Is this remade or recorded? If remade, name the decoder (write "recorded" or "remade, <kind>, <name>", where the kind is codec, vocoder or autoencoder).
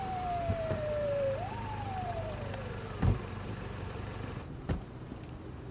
remade, vocoder, BigVGAN v2